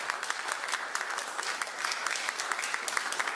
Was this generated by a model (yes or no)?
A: no